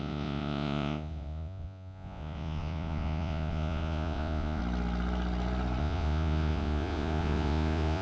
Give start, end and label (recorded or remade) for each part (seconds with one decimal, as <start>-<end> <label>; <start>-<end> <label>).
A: 0.0-4.6 remade; 4.6-5.8 recorded; 5.8-8.0 remade